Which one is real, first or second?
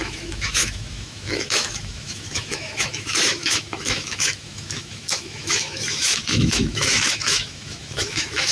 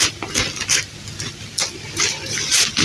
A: second